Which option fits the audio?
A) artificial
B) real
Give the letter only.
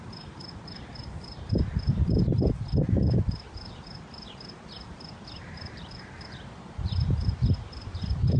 A